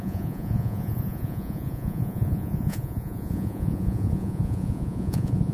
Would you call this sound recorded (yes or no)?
no